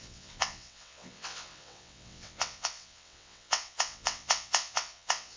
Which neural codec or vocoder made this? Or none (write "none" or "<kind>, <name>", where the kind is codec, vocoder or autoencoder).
vocoder, WaveNeXt